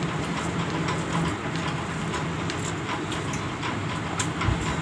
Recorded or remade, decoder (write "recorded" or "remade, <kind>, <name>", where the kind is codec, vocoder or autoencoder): recorded